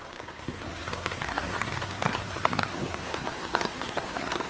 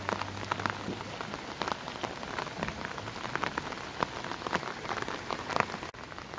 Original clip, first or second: second